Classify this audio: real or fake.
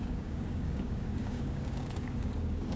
fake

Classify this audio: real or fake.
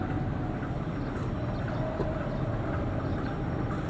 real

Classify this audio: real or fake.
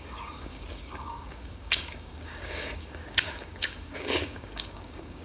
fake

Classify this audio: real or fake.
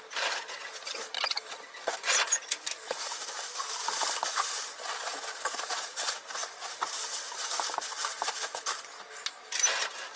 real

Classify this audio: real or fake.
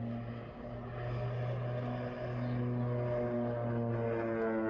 real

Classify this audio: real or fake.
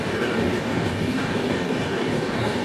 fake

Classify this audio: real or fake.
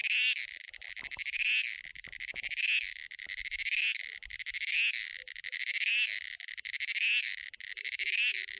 real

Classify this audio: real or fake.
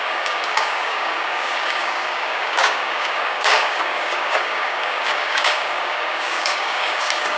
fake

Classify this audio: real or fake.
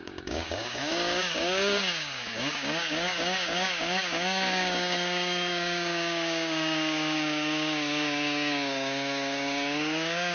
fake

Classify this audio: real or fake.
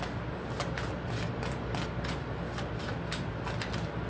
real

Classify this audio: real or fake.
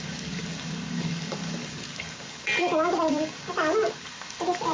fake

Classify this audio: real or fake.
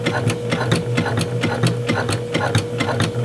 real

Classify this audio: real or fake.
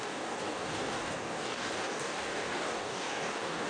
fake